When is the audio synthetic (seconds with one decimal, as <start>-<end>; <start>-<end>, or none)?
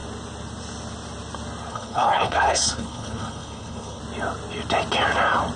1.7-4.0